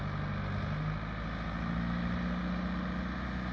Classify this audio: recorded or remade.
recorded